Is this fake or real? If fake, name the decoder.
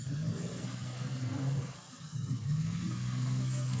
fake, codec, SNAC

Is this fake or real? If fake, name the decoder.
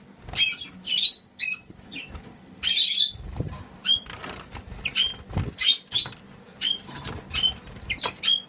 real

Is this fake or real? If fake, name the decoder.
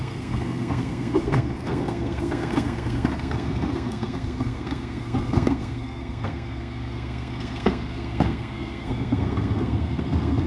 fake, codec, SNAC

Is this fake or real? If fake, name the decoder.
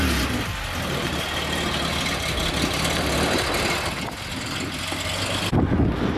real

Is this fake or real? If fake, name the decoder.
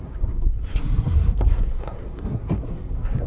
fake, codec, SNAC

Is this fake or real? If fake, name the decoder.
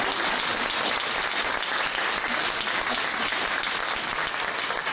real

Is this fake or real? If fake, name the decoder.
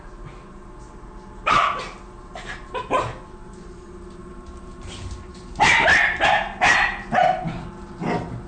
real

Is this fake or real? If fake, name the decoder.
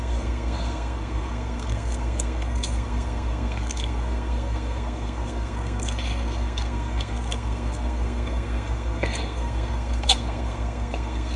fake, codec, SNAC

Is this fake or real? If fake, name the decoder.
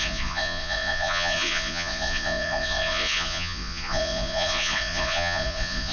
fake, vocoder, Vocos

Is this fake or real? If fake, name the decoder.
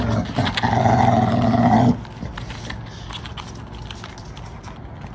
real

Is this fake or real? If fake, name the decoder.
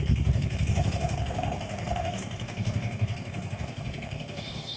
fake, codec, DAC